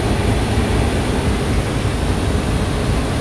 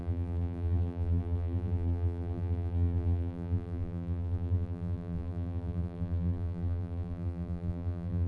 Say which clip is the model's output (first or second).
second